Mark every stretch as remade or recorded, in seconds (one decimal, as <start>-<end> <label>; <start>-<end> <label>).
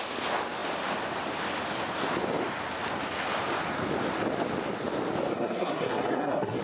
0.0-5.3 recorded; 5.3-6.6 remade